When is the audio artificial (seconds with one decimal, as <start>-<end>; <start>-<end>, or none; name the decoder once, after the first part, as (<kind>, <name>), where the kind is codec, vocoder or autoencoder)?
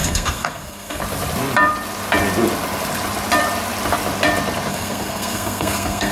0.0-1.0 (codec, SNAC); 4.7-6.1